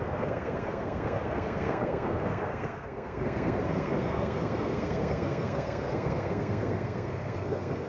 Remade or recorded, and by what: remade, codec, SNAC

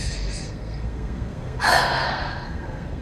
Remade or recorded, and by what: remade, codec, SNAC